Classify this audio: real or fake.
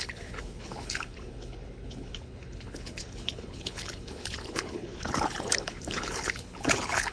fake